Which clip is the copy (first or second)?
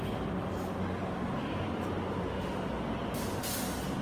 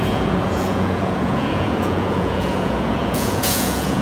second